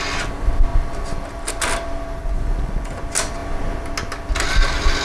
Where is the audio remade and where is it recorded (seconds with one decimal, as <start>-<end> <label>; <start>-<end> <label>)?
0.0-2.2 recorded; 2.2-2.9 remade; 2.9-5.0 recorded